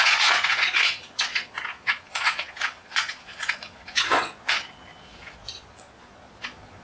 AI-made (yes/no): yes